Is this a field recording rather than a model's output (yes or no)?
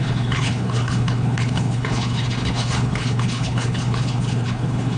no